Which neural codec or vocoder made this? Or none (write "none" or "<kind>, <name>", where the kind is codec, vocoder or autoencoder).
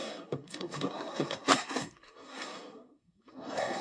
codec, SNAC